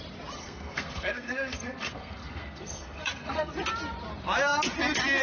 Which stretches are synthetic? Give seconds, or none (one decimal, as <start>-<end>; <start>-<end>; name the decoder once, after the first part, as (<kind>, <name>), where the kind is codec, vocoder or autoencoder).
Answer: 0.4-3.5 (codec, SNAC)